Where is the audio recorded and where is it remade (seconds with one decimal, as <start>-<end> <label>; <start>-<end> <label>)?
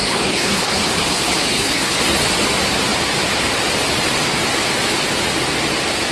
0.0-2.0 remade; 2.0-6.1 recorded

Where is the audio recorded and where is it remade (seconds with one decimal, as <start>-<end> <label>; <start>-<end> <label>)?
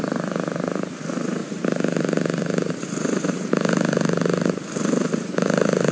0.0-5.9 remade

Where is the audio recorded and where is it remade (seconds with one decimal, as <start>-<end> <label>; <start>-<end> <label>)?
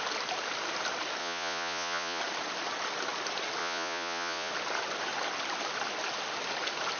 0.0-1.2 recorded; 1.2-2.2 remade; 2.2-3.6 recorded; 3.6-4.5 remade; 4.5-7.0 recorded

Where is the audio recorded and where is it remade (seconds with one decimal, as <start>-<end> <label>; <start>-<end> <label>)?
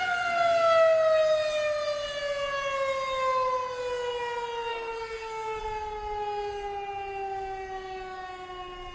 0.0-4.7 recorded; 4.7-5.6 remade; 5.6-8.9 recorded